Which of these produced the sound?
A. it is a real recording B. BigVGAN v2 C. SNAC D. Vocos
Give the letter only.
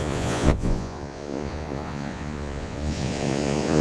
D